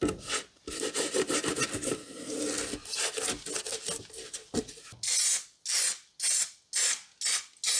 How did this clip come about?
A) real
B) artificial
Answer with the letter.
A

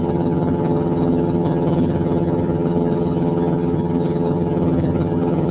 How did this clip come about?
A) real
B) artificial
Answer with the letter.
B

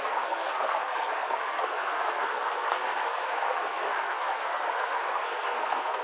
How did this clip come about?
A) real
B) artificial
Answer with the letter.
B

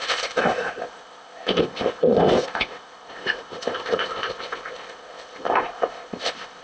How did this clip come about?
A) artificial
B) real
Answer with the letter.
A